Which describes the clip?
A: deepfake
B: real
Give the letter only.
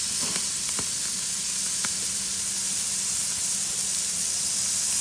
B